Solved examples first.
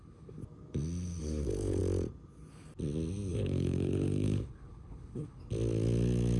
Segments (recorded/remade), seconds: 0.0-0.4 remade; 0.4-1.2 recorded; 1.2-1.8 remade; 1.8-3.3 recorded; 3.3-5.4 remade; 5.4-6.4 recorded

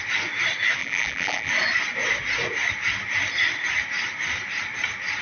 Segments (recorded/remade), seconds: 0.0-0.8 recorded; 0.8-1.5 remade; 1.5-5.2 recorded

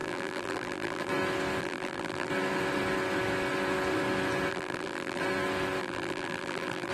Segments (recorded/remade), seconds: 0.0-1.1 remade; 1.1-1.6 recorded; 1.6-2.3 remade; 2.3-4.5 recorded; 4.5-5.2 remade; 5.2-5.8 recorded; 5.8-6.9 remade

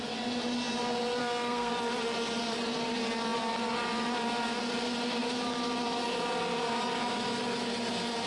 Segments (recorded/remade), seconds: 0.0-1.2 recorded; 1.2-1.7 remade; 1.7-8.3 recorded